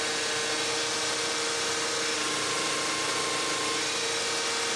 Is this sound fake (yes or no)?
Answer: no